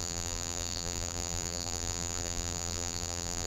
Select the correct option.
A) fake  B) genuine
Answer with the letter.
A